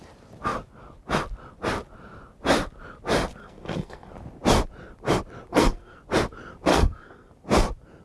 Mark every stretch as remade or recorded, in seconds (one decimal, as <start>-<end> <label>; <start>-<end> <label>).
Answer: 0.0-3.4 recorded; 3.4-4.1 remade; 4.1-5.5 recorded; 5.5-6.0 remade; 6.0-6.7 recorded; 6.7-7.3 remade; 7.3-8.0 recorded